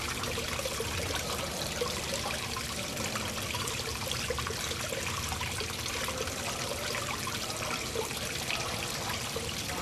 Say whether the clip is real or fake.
fake